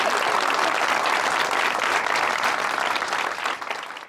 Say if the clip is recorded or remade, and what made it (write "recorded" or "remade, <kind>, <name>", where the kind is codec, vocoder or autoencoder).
recorded